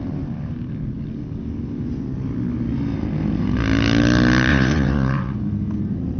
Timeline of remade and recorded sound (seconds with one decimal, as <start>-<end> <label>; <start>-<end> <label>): 0.0-4.5 recorded; 4.5-5.4 remade; 5.4-6.2 recorded

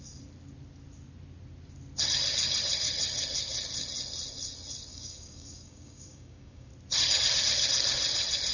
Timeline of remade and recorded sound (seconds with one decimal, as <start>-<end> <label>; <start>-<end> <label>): 0.0-4.9 recorded; 4.9-6.7 remade; 6.7-8.5 recorded

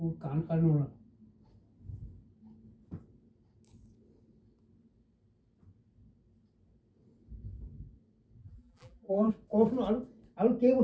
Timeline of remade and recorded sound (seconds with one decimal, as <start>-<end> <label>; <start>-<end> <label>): 0.0-8.4 recorded; 8.4-9.3 remade; 9.3-10.8 recorded

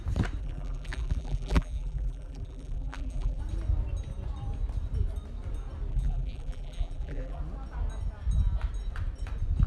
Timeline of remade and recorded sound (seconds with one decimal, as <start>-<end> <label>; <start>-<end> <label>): 0.0-0.4 recorded; 0.4-3.4 remade; 3.4-5.9 recorded; 5.9-7.4 remade; 7.4-9.7 recorded

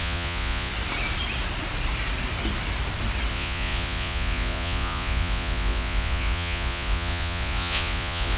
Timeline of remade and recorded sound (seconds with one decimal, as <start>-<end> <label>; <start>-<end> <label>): 0.0-0.7 remade; 0.7-3.3 recorded; 3.3-8.4 remade

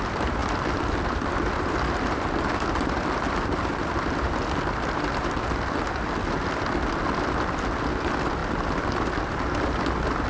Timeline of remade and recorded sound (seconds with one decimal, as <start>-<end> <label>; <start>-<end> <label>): 0.0-10.3 recorded

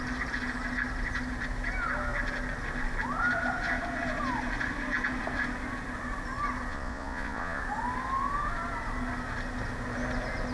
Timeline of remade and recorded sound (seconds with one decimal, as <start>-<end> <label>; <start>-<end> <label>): 0.0-6.7 recorded; 6.7-7.6 remade; 7.6-10.5 recorded